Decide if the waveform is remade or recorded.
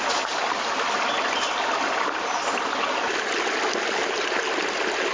recorded